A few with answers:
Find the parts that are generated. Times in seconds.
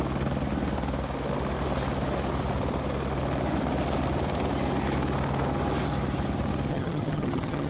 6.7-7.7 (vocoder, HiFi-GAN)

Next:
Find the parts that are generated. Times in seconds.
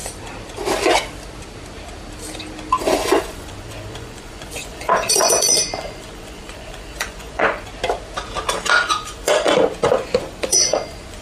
2.7-7.7 (vocoder, Vocos); 8.7-11.2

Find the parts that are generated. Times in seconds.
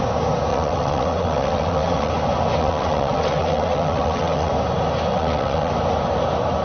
0.5-2.1 (vocoder, WaveNeXt); 2.6-4.5; 5.1-5.7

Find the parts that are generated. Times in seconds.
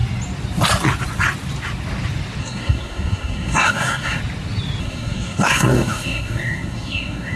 2.4-4.2 (codec, SNAC); 4.8-7.4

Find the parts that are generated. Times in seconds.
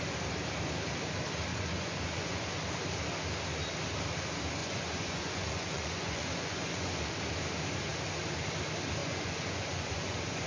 1.5-2.5 (vocoder, Vocos); 4.6-7.1; 9.0-10.5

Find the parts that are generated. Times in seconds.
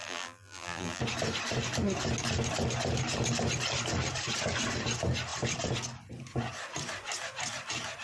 0.0-1.0 (vocoder, BigVGAN v2)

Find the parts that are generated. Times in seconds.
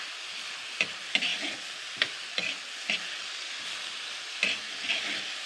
none